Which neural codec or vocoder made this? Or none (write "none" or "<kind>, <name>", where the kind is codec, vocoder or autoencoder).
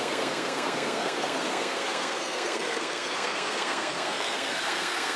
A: codec, SNAC